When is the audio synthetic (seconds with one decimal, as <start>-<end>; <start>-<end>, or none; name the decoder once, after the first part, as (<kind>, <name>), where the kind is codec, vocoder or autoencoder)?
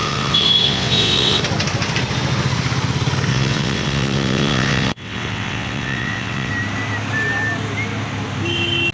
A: 0.0-1.4 (vocoder, WaveNeXt); 3.3-6.5